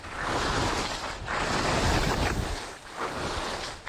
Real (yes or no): yes